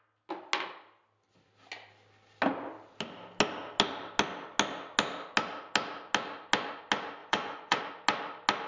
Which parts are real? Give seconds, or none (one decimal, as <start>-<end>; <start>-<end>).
0.0-7.2; 7.8-8.7